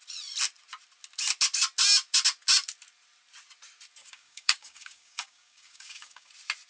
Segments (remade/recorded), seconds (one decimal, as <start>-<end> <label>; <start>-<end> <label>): 0.0-4.0 recorded; 4.0-6.3 remade; 6.3-6.7 recorded